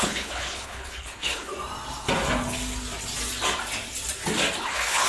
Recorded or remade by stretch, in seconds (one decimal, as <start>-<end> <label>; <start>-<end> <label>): 0.0-1.5 remade; 1.5-4.6 recorded; 4.6-5.1 remade

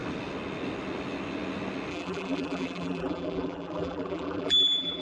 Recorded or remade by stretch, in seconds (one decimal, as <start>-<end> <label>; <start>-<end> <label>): 0.0-1.9 recorded; 1.9-5.0 remade